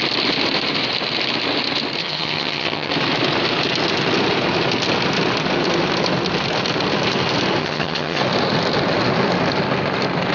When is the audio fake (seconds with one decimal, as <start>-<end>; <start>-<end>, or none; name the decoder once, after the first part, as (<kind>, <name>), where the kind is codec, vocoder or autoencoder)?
2.0-2.9 (vocoder, HiFi-GAN); 7.6-8.2